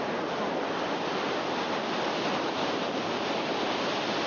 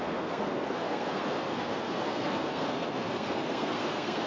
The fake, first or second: second